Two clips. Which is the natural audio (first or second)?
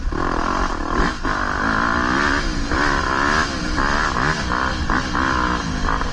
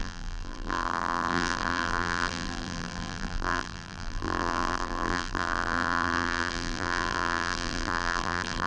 first